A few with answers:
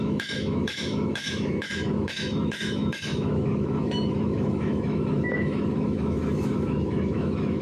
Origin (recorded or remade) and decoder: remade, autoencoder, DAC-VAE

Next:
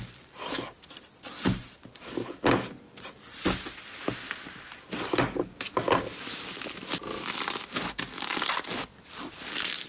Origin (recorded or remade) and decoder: recorded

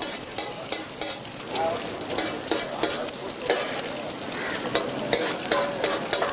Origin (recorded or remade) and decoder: recorded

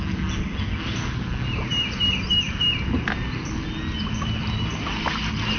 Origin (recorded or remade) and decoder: recorded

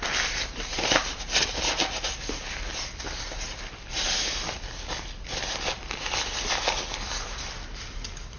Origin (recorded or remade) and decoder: recorded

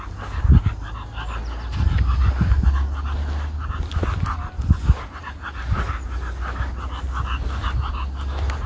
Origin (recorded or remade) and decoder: recorded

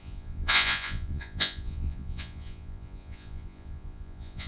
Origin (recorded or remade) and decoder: remade, vocoder, Vocos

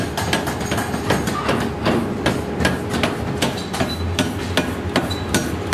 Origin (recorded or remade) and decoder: recorded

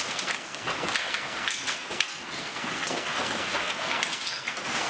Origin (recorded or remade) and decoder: remade, codec, SNAC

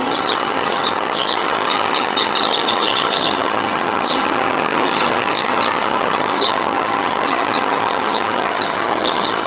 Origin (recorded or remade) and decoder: remade, vocoder, HiFi-GAN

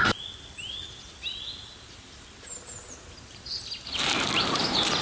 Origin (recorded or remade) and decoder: recorded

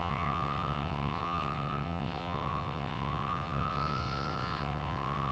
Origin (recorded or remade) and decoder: remade, vocoder, WaveNeXt